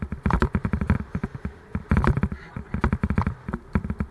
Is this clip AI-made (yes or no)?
no